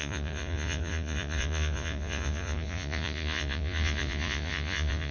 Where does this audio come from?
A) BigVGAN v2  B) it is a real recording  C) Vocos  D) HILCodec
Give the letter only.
C